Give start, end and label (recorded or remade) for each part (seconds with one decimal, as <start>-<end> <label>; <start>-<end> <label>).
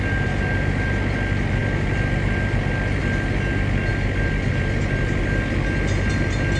0.0-6.6 recorded